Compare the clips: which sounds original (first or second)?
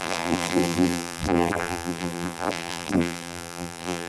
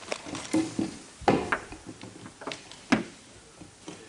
second